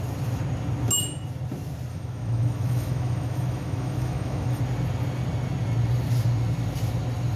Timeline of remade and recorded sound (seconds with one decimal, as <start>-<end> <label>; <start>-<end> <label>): 0.0-1.9 recorded; 1.9-4.6 remade; 4.6-7.4 recorded